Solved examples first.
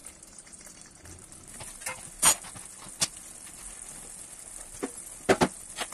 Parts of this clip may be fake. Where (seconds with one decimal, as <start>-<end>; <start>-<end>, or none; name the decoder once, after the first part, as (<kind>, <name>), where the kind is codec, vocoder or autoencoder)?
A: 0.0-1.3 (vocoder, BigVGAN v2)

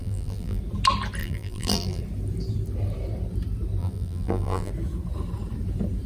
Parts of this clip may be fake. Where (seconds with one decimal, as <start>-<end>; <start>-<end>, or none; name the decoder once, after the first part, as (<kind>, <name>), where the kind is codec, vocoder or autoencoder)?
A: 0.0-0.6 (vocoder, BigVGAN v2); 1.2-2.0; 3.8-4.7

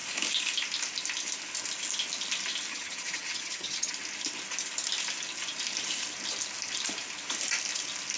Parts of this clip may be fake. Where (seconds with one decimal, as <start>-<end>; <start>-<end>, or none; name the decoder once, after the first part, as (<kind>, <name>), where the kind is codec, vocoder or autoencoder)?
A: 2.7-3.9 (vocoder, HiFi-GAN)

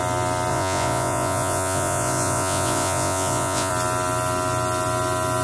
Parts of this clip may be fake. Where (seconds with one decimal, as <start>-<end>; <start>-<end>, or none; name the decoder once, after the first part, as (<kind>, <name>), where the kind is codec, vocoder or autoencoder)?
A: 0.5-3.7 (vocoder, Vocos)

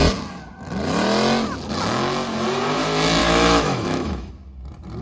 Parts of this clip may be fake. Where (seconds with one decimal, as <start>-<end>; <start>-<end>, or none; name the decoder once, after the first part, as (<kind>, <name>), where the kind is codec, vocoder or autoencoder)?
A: 3.2-4.3 (autoencoder, DAC-VAE)